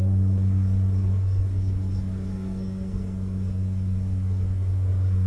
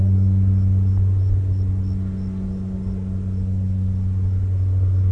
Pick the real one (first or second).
second